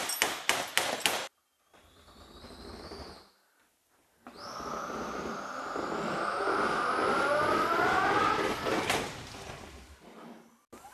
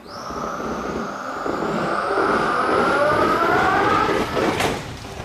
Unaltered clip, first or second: first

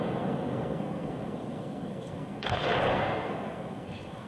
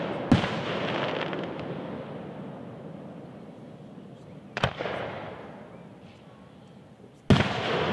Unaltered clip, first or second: second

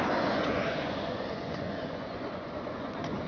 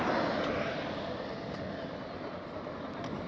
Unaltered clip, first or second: second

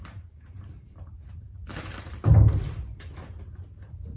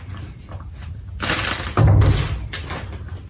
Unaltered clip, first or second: second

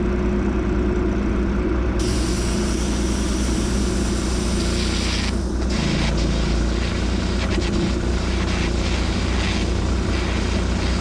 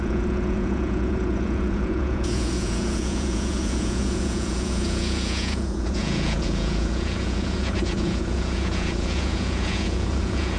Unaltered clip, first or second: first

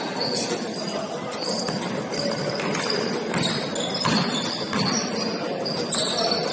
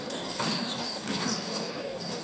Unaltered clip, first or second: first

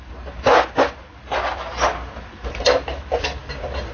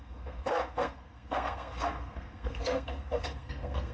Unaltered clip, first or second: first